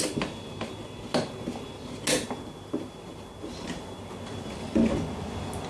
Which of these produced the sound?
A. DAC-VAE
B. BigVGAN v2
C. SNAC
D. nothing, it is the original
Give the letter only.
D